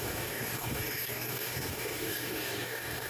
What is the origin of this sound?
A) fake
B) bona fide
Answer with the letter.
A